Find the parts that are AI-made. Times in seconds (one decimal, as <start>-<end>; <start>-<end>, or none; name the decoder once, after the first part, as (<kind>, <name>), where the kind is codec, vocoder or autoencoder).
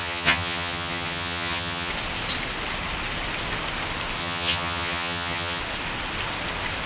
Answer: 0.0-1.9 (vocoder, HiFi-GAN); 4.2-5.6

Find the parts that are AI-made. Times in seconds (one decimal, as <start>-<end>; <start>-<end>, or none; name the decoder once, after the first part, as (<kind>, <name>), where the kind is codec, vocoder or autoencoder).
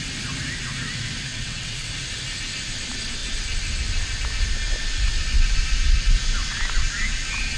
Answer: 1.3-1.9 (vocoder, WaveNeXt)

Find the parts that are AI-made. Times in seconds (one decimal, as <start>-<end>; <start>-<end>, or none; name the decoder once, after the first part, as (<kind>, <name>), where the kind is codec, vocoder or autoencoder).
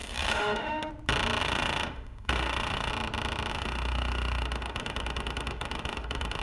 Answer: 0.0-0.9 (autoencoder, DAC-VAE); 1.4-2.9; 3.5-6.4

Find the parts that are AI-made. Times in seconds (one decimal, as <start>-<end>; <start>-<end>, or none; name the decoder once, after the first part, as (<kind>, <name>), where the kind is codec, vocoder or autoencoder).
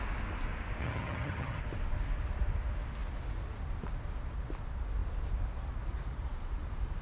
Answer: 0.8-1.6 (vocoder, HiFi-GAN)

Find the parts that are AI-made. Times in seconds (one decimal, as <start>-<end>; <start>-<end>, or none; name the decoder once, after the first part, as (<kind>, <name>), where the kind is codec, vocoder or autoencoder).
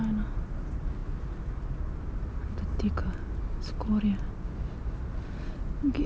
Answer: none